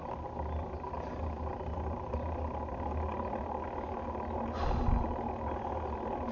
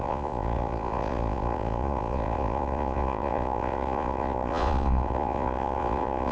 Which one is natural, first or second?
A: first